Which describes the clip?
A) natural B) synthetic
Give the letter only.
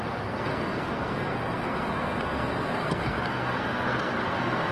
B